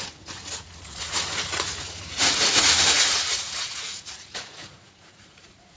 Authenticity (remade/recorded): remade